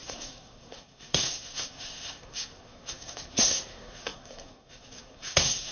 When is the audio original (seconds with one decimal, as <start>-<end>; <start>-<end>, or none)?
none